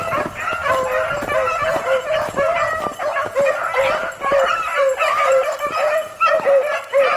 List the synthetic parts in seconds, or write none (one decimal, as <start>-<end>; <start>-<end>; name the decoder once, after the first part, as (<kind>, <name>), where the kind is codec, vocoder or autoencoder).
4.6-5.7 (vocoder, BigVGAN v2)